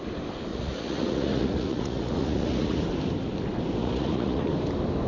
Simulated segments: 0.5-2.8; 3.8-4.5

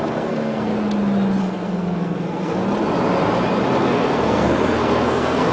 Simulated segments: 0.0-0.7; 1.4-2.6; 3.8-5.5

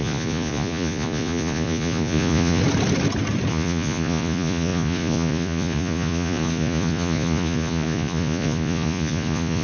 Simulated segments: 0.0-2.6; 3.5-9.6

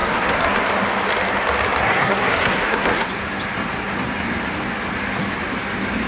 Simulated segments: 0.0-0.6; 1.8-3.1

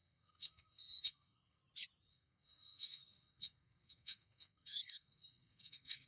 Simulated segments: 0.0-1.6; 2.1-6.1

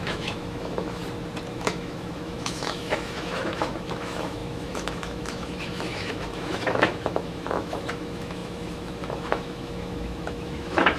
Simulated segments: 0.0-1.0; 1.5-11.0